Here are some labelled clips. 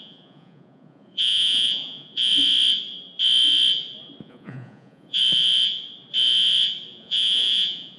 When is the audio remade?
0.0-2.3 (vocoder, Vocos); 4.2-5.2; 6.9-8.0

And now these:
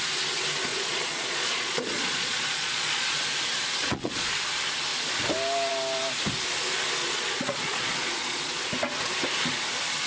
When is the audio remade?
0.7-3.2 (vocoder, Vocos); 3.8-4.3; 7.0-8.6